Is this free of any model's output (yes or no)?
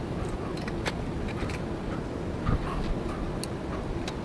yes